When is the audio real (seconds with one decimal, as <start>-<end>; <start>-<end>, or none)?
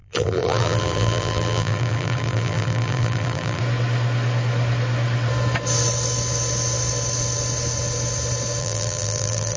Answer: 3.6-8.6